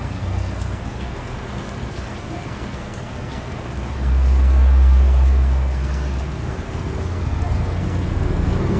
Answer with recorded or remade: remade